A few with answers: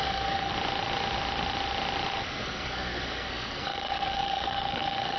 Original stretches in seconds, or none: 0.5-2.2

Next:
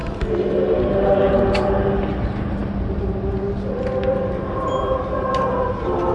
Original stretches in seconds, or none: 0.0-6.1